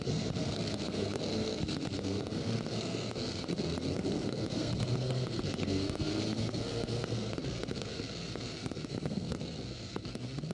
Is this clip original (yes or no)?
no